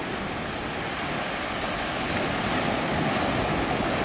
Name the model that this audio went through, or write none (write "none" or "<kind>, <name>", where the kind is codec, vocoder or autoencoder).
none